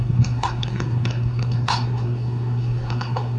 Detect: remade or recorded remade